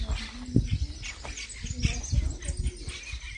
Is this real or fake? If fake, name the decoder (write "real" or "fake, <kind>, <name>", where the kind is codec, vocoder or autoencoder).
real